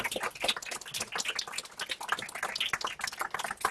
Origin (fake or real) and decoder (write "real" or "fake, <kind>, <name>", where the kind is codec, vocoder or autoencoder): real